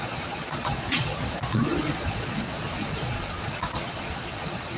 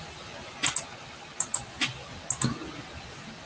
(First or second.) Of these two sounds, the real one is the second